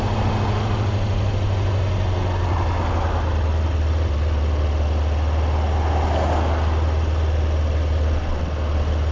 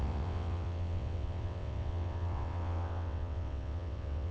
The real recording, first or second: first